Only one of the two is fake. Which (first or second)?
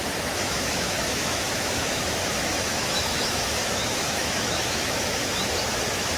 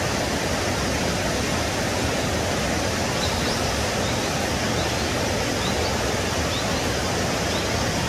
first